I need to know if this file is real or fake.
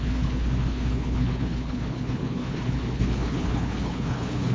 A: fake